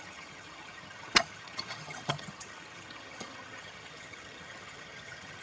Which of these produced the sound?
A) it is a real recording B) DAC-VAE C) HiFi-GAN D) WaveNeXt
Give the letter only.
C